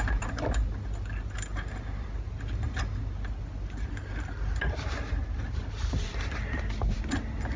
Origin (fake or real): real